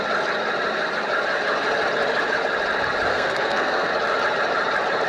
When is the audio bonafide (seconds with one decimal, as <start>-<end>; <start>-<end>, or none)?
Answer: 0.0-3.1; 3.9-5.1